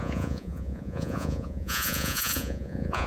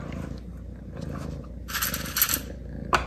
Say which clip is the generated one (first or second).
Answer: first